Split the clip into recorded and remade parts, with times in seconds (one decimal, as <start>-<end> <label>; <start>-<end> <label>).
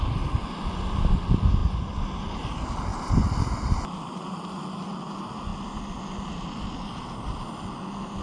0.0-2.9 recorded; 2.9-4.2 remade; 4.2-5.5 recorded; 5.5-6.0 remade; 6.0-8.2 recorded